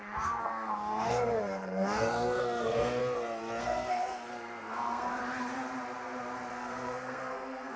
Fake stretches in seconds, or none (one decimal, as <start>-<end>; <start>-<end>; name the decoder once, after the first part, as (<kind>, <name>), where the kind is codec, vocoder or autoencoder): 0.0-3.0 (codec, SNAC); 3.6-5.2; 6.5-7.8